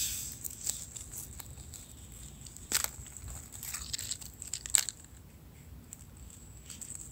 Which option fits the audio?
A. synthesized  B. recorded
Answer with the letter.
B